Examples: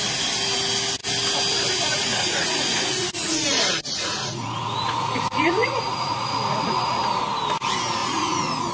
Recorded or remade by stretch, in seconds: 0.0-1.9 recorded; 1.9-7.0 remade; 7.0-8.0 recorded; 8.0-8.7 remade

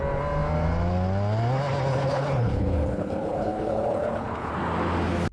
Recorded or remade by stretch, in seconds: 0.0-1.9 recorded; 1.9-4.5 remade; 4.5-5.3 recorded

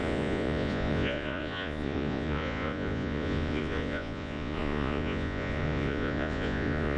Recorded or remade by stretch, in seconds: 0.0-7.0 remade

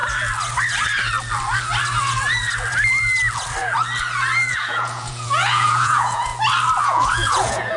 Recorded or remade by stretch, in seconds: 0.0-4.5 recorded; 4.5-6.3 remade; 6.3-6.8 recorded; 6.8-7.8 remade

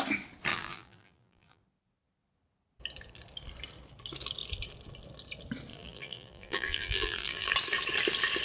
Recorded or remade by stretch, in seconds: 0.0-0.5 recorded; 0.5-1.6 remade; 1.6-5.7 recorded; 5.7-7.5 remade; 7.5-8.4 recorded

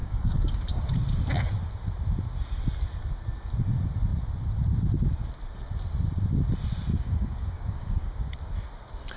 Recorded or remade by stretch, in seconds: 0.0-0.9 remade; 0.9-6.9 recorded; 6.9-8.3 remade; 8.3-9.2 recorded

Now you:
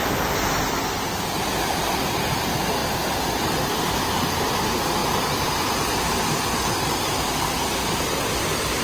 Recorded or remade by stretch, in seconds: 0.0-2.8 recorded; 2.8-3.7 remade; 3.7-8.8 recorded

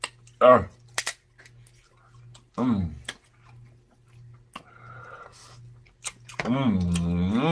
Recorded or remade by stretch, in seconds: 0.0-7.5 recorded